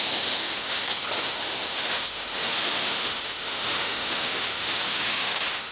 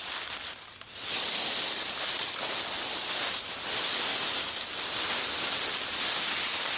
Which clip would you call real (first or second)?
second